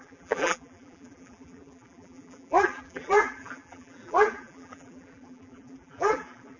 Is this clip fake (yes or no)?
yes